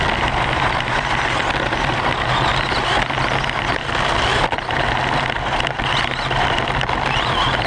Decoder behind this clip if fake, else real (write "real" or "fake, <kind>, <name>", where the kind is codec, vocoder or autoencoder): real